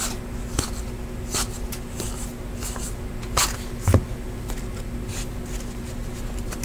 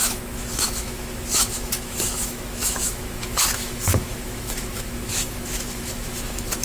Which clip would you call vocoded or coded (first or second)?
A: second